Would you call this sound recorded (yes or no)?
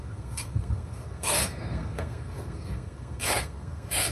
no